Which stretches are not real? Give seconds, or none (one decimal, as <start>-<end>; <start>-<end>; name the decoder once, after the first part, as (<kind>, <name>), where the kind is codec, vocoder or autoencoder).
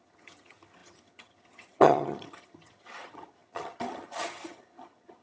0.0-5.2 (vocoder, HiFi-GAN)